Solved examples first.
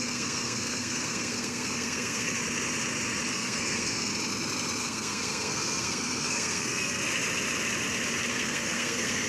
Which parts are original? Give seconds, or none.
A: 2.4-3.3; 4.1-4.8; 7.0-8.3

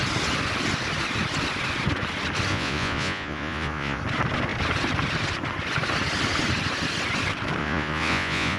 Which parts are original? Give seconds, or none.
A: 0.0-2.5; 4.0-7.6

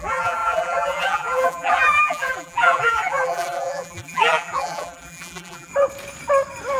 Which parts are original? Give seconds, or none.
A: 5.7-6.8

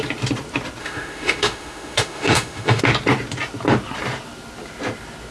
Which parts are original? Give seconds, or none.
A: 0.0-0.8; 2.8-5.3

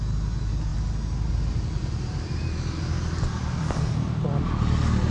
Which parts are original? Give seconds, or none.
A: 0.0-5.1

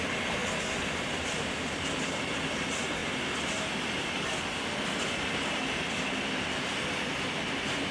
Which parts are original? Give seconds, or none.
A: 0.0-7.9